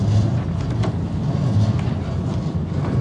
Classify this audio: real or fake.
real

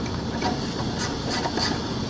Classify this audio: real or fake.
fake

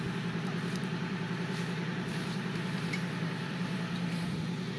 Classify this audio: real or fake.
fake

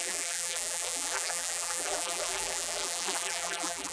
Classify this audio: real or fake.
fake